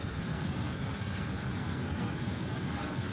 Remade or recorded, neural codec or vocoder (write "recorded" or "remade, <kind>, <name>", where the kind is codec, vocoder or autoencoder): remade, codec, SNAC